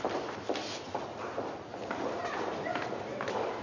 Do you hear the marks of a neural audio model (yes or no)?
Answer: no